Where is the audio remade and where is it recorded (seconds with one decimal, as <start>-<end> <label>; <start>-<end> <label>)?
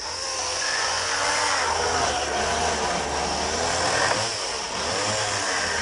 0.0-0.5 recorded; 0.5-1.3 remade; 1.3-5.8 recorded